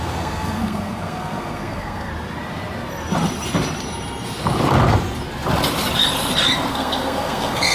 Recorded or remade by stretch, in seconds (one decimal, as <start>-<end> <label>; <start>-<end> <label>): 0.0-2.1 remade; 2.1-6.7 recorded; 6.7-7.7 remade